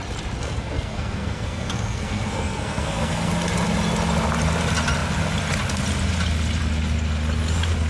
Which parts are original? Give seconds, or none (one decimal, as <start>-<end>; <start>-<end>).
0.0-0.4; 3.3-7.9